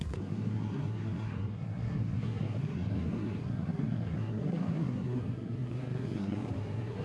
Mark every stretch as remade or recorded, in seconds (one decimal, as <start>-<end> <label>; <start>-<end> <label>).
0.0-7.0 remade